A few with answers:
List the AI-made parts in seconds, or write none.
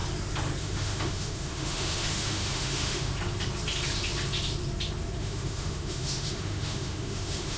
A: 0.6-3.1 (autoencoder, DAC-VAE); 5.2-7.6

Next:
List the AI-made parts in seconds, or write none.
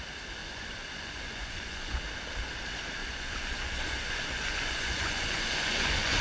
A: 0.4-2.0 (vocoder, Vocos); 3.0-6.2